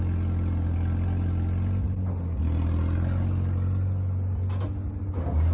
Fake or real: real